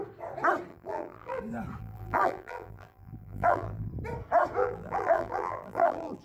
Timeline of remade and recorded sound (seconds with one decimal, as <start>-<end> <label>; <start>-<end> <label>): 0.0-0.7 recorded; 0.7-1.4 remade; 1.4-1.8 recorded; 1.8-3.9 remade; 3.9-4.6 recorded; 4.6-6.2 remade